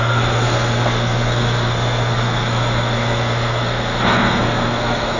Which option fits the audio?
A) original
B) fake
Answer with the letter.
B